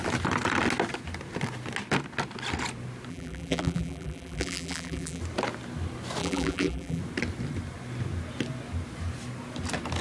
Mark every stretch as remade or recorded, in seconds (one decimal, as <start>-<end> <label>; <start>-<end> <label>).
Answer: 0.0-3.1 recorded; 3.1-5.2 remade; 5.2-6.2 recorded; 6.2-7.0 remade; 7.0-10.0 recorded